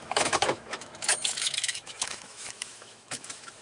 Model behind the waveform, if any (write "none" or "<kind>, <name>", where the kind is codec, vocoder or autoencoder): autoencoder, DAC-VAE